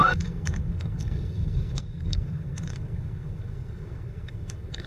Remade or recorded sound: remade